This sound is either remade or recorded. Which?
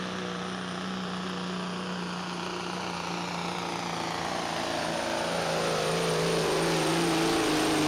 recorded